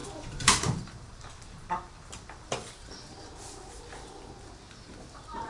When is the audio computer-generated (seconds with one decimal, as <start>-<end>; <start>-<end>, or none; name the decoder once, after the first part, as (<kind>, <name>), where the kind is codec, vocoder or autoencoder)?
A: 0.0-3.3 (vocoder, BigVGAN v2)